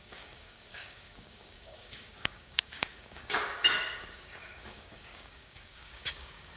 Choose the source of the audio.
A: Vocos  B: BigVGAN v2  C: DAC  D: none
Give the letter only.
C